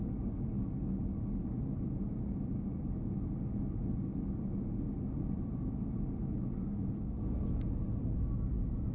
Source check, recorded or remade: recorded